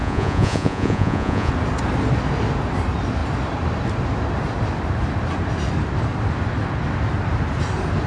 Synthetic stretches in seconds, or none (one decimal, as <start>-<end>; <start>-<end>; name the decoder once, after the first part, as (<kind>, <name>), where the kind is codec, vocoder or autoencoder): 0.0-1.5 (vocoder, Vocos)